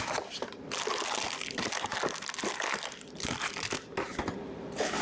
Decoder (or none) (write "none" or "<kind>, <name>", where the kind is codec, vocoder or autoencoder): none